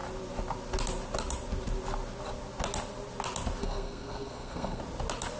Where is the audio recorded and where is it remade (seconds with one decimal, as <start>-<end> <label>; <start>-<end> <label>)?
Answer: 0.0-3.6 recorded; 3.6-4.8 remade; 4.8-5.4 recorded